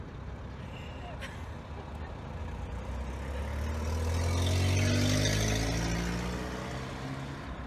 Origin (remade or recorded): recorded